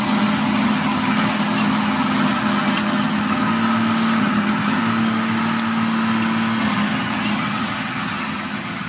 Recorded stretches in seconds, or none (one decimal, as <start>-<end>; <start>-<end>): 3.5-4.2; 4.8-6.6